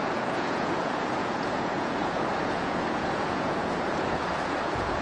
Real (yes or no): no